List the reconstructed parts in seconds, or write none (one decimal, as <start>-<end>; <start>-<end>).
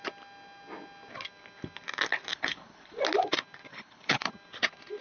2.3-3.0; 3.7-4.3